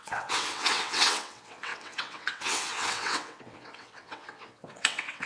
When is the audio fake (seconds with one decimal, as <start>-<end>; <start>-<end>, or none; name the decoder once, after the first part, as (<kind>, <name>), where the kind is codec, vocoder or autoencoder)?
0.0-5.3 (vocoder, WaveNeXt)